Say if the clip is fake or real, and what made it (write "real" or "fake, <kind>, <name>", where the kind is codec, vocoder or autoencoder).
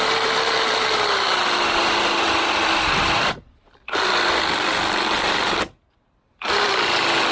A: real